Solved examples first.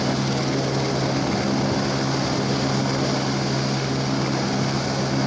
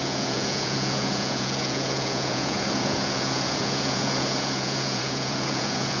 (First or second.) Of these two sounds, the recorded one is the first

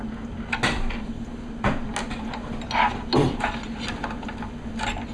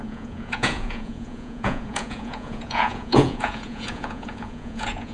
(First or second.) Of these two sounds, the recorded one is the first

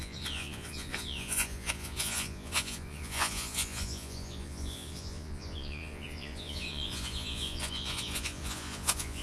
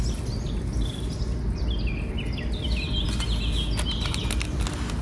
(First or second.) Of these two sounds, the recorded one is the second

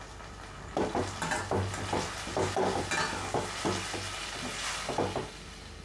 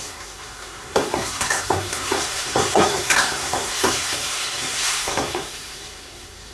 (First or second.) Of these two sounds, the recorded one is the first